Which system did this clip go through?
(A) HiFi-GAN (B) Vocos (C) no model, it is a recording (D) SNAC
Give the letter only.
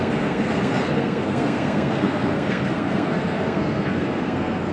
D